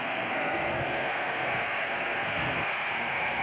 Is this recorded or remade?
remade